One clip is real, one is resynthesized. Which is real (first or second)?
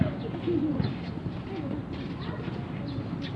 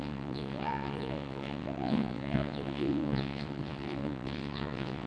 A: first